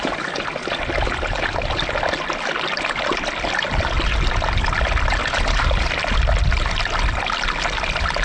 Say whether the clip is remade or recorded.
recorded